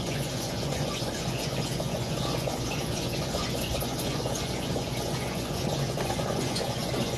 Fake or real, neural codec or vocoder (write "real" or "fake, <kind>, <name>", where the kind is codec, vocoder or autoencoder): fake, vocoder, Vocos